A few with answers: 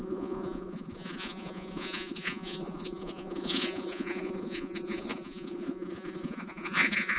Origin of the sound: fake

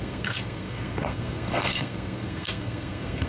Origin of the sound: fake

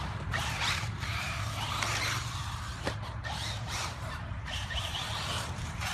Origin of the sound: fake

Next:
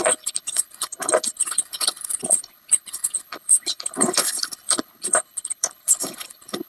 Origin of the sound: fake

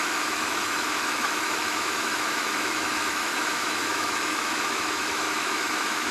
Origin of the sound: fake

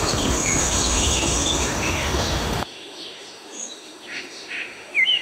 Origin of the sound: fake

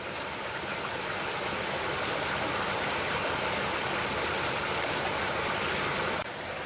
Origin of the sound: real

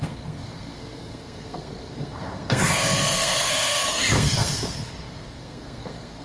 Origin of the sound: fake